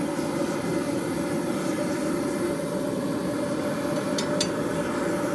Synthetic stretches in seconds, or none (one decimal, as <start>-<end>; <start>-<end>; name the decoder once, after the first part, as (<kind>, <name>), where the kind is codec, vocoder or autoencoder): none